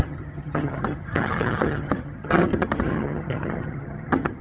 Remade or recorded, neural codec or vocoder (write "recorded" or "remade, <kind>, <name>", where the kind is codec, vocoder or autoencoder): remade, vocoder, HiFi-GAN